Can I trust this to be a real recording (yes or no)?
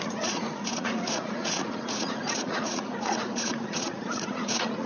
no